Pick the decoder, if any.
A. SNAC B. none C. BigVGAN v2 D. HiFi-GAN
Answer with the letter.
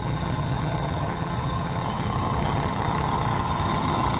D